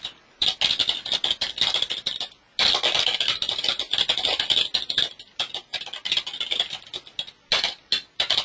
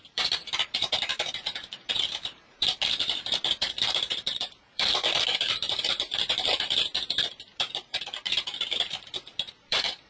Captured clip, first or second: first